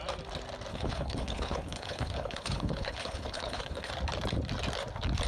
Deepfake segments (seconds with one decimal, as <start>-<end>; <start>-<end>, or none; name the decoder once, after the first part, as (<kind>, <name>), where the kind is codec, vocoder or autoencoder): 0.7-3.9 (codec, HILCodec)